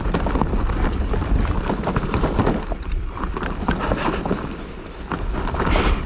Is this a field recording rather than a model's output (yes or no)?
yes